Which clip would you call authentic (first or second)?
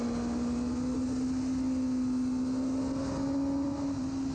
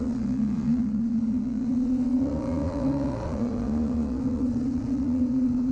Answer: first